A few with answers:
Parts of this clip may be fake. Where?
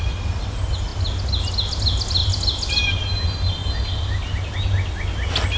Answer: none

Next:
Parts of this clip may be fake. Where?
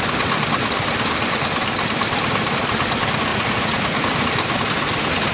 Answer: 3.3-4.1 (vocoder, Vocos)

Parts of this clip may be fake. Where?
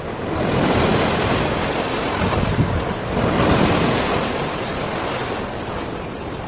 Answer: none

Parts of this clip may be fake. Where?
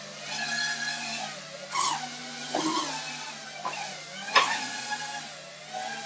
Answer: 4.2-4.9 (vocoder, Vocos)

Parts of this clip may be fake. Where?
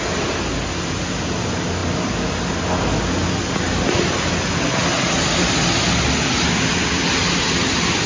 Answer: none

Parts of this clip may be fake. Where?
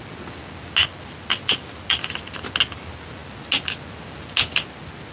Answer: none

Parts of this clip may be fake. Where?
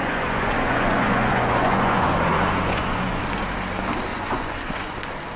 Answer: 0.0-3.2 (vocoder, Vocos); 4.1-5.0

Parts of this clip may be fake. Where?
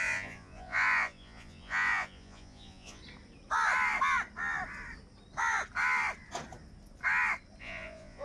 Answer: 0.0-3.0 (vocoder, Vocos); 7.6-8.2